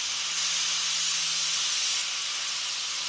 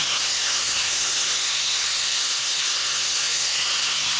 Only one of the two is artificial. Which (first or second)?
second